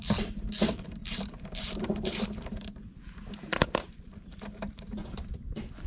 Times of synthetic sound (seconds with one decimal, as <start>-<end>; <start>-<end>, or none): 0.0-5.9